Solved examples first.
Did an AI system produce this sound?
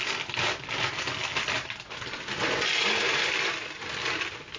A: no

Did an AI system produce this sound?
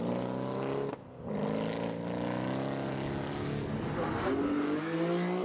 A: no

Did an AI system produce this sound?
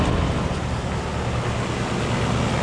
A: no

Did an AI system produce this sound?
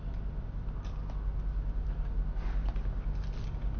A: no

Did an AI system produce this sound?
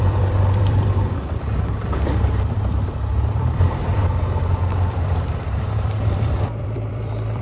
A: yes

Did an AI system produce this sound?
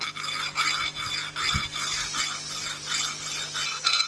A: no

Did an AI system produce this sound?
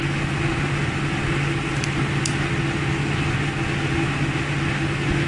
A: no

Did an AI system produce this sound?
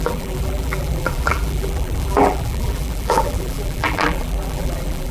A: yes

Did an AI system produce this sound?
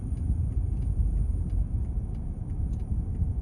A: yes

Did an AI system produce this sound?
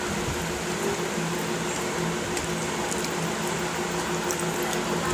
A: no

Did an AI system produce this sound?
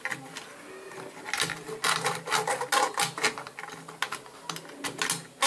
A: no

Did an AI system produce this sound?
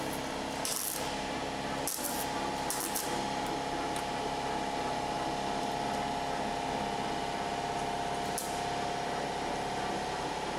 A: no